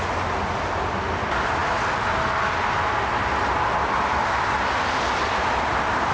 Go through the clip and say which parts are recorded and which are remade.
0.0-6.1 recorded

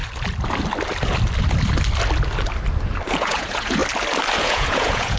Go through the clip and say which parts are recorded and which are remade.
0.0-3.1 recorded; 3.1-3.8 remade; 3.8-4.4 recorded; 4.4-5.2 remade

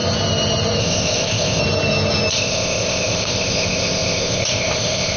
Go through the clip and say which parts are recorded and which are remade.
0.0-0.8 recorded; 0.8-1.6 remade; 1.6-2.3 recorded; 2.3-5.2 remade

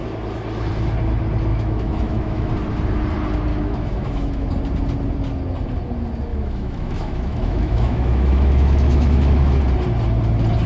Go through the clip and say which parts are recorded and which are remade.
0.0-1.5 recorded; 1.5-2.5 remade; 2.5-3.5 recorded; 3.5-4.5 remade; 4.5-6.3 recorded; 6.3-9.6 remade; 9.6-10.7 recorded

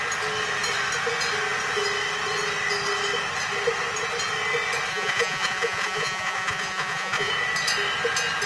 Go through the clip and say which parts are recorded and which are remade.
0.0-4.9 recorded; 4.9-7.3 remade; 7.3-8.5 recorded

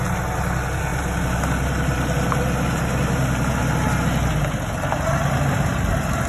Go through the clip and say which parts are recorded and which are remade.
0.0-0.9 recorded; 0.9-3.6 remade; 3.6-6.3 recorded